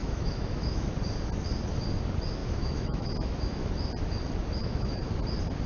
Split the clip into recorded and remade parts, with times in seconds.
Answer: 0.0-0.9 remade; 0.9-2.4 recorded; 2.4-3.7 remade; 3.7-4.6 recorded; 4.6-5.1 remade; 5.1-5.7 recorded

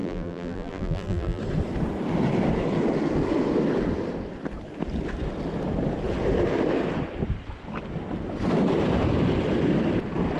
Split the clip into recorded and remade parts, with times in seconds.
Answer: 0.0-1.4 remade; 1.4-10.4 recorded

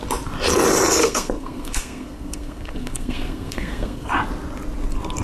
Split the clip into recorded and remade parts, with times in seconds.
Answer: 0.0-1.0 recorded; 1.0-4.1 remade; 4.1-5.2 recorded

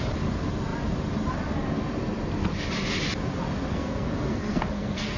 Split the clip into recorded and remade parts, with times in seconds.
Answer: 0.0-3.7 recorded; 3.7-5.2 remade

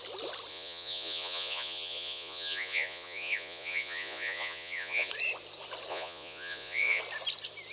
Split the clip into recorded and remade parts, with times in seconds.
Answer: 0.0-0.5 recorded; 0.5-5.1 remade; 5.1-5.9 recorded; 5.9-7.0 remade; 7.0-7.7 recorded

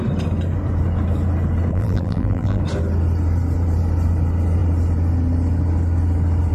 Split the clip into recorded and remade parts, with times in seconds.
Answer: 0.0-1.7 recorded; 1.7-2.6 remade; 2.6-6.5 recorded